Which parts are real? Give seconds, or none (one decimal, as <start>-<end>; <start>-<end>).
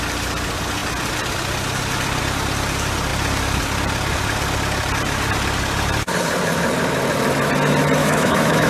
0.0-8.0